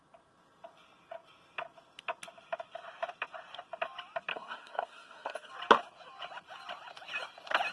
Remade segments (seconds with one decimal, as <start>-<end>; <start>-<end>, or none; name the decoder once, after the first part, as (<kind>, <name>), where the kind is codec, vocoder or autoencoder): 4.3-5.5 (codec, SNAC)